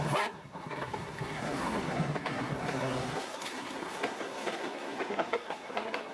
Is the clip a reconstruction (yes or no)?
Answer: yes